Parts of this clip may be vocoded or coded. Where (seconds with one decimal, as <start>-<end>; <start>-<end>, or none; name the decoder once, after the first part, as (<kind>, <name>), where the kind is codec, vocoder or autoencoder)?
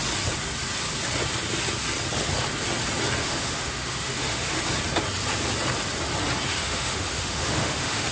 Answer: 3.2-4.6 (autoencoder, DAC-VAE); 6.5-8.1